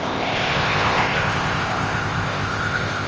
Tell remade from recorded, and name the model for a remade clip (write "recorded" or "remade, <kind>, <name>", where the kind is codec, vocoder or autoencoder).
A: remade, codec, ZipCodec